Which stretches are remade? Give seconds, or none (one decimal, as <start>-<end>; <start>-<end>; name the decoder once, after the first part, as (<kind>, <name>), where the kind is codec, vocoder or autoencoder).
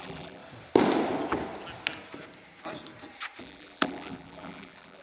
0.0-0.4 (vocoder, BigVGAN v2); 3.4-5.0